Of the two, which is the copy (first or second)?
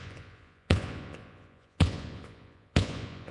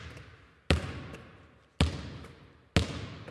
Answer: first